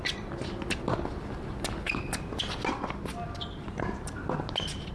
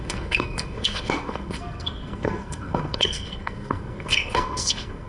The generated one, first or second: second